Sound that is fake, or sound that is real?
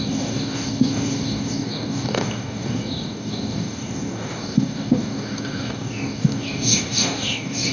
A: fake